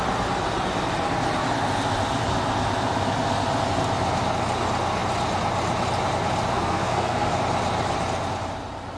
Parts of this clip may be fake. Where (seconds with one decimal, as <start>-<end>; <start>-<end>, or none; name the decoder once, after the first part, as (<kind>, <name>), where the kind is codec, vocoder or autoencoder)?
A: 6.5-7.4 (codec, SNAC)